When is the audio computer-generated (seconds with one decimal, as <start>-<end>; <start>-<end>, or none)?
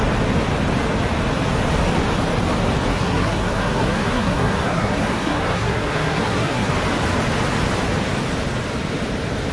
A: 2.9-6.7